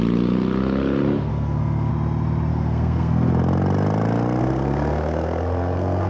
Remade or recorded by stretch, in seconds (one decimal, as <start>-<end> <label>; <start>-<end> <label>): 0.0-1.3 recorded; 1.3-1.9 remade; 1.9-2.5 recorded; 2.5-3.3 remade; 3.3-4.4 recorded; 4.4-6.1 remade